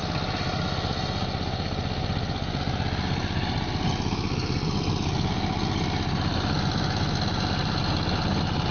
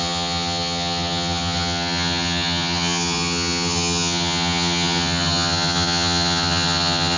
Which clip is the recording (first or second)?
first